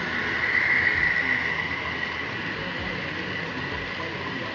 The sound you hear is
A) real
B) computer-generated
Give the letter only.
A